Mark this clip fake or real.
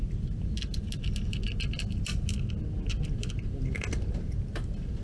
real